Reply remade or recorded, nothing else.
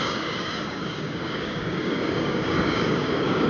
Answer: remade